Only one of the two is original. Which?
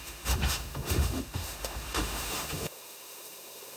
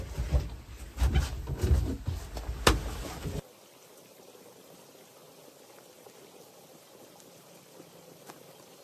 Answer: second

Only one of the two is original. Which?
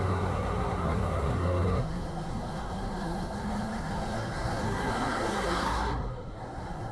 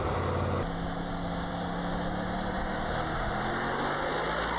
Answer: second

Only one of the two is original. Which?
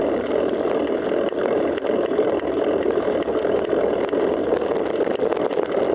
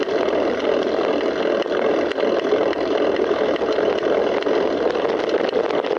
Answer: second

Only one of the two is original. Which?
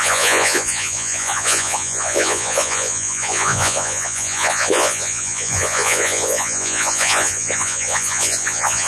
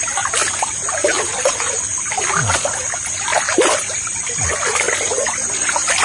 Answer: second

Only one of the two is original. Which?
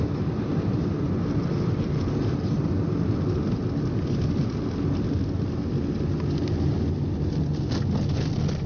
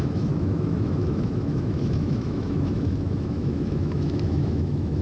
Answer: first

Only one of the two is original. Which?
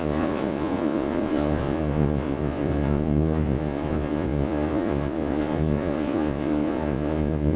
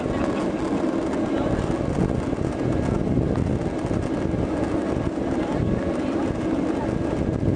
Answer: second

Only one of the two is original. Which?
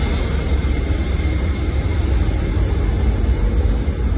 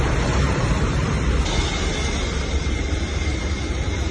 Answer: first